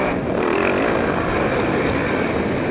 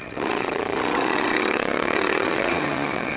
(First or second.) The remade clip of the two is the second